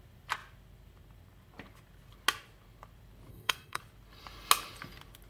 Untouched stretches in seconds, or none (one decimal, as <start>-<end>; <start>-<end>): 0.0-3.3; 3.8-5.3